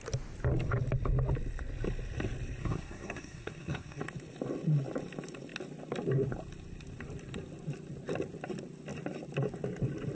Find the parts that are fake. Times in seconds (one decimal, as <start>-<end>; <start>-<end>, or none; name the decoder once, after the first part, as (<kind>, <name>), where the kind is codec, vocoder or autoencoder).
2.6-4.0 (codec, SNAC)